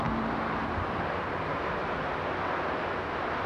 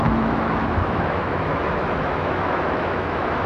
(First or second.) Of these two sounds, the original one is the first